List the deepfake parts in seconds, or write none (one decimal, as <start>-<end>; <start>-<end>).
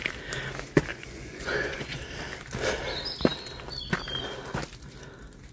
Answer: 0.9-2.0